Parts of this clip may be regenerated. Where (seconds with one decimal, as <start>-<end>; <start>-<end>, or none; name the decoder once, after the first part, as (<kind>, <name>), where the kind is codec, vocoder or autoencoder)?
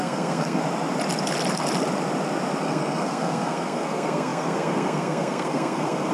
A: 0.0-0.6 (codec, SNAC); 2.6-6.1